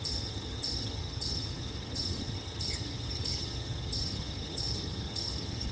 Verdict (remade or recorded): remade